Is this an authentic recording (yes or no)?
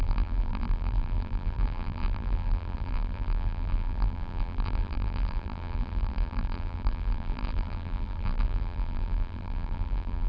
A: no